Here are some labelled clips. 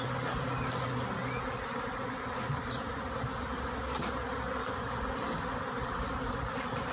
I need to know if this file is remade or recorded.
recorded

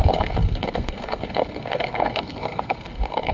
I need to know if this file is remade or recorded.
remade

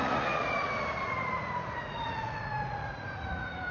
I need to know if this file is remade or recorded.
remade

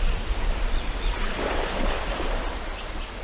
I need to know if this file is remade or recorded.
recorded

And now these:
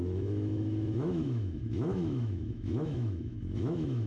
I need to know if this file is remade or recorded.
remade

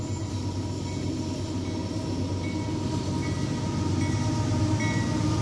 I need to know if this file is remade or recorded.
recorded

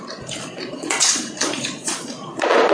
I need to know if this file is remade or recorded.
remade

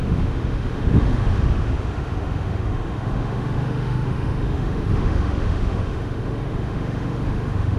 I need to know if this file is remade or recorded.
remade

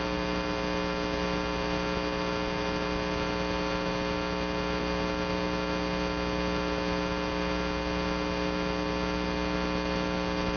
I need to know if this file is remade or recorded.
recorded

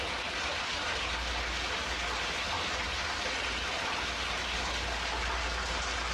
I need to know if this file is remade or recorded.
recorded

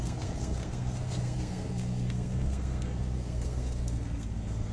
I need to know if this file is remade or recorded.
remade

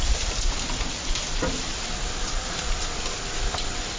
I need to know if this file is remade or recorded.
remade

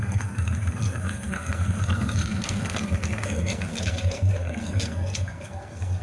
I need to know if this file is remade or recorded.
remade